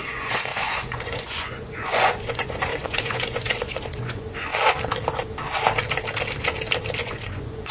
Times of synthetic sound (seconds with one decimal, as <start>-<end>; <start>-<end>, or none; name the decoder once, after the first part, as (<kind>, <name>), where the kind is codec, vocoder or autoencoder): 0.0-4.5 (vocoder, Vocos); 7.0-7.7